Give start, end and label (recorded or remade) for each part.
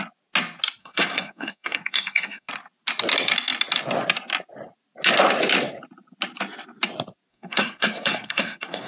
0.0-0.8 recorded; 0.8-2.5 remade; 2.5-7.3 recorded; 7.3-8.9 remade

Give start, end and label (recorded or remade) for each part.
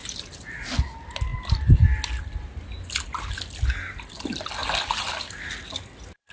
0.0-6.3 recorded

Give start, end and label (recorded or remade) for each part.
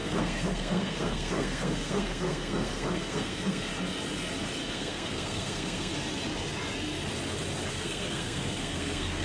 0.0-3.7 remade; 3.7-4.7 recorded; 4.7-5.9 remade; 5.9-7.7 recorded; 7.7-9.2 remade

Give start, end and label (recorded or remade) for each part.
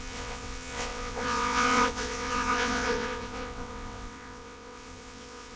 0.0-5.6 remade